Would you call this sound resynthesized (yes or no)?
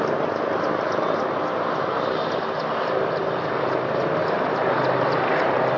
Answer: no